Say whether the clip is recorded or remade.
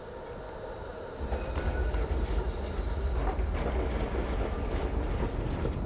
recorded